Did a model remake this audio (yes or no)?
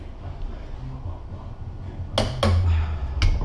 no